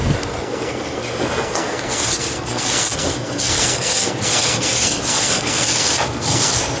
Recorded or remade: remade